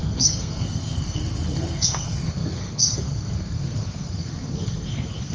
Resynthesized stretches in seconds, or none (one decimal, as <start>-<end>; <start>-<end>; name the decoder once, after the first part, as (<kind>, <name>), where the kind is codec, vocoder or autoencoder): 0.0-5.3 (codec, SNAC)